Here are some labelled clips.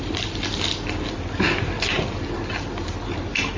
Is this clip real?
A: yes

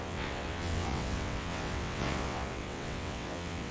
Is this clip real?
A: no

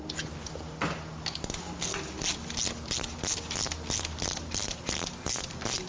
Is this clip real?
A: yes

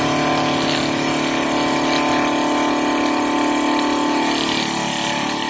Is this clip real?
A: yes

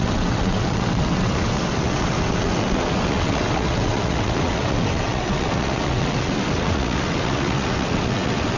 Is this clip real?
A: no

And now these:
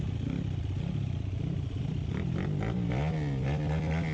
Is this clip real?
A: yes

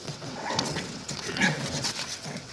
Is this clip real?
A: no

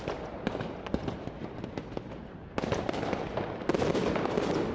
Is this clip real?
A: yes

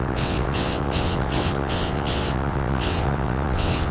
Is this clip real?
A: no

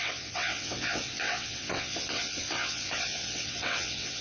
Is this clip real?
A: no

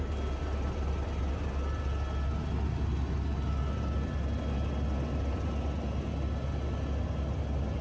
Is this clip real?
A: yes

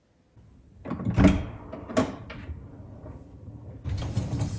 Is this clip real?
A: yes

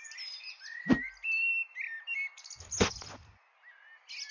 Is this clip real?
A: yes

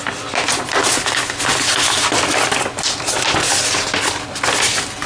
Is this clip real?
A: yes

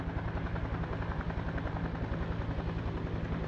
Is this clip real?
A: yes